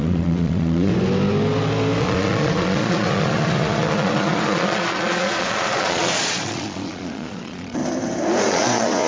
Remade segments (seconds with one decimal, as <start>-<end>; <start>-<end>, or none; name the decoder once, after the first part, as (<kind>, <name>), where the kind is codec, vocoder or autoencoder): 0.0-0.9 (vocoder, Vocos); 2.0-7.8; 8.4-9.1